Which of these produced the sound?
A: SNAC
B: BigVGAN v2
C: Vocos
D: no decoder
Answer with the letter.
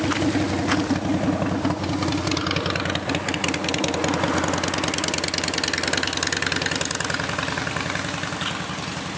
D